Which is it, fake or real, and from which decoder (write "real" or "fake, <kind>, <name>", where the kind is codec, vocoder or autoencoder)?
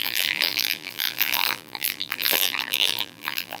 fake, vocoder, BigVGAN v2